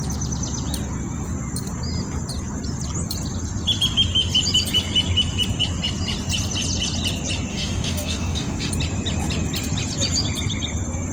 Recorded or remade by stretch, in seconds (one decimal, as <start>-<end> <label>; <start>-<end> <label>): 0.0-7.5 recorded; 7.5-8.7 remade; 8.7-11.1 recorded